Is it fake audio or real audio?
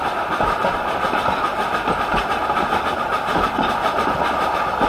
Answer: real